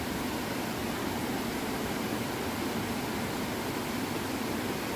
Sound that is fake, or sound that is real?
real